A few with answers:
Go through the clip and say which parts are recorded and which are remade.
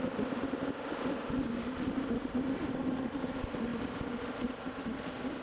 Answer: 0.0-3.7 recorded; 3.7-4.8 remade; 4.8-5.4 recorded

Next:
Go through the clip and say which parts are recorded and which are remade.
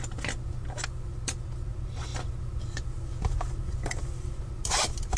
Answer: 0.0-5.2 recorded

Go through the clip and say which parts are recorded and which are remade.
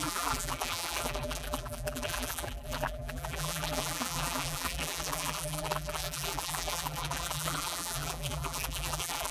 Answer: 0.0-9.3 remade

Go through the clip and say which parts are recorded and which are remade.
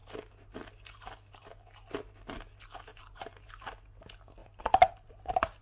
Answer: 0.0-2.9 recorded; 2.9-3.5 remade; 3.5-5.6 recorded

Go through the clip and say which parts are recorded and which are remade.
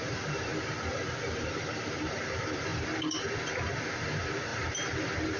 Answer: 0.0-0.5 remade; 0.5-1.0 recorded; 1.0-5.4 remade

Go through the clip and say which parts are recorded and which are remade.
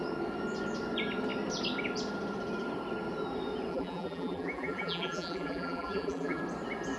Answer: 0.0-3.7 recorded; 3.7-6.4 remade; 6.4-7.0 recorded